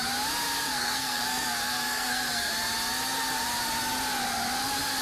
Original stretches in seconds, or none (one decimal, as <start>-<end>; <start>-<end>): 0.0-0.6; 2.5-5.0